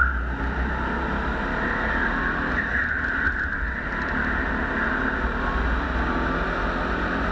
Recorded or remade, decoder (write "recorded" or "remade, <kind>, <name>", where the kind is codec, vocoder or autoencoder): recorded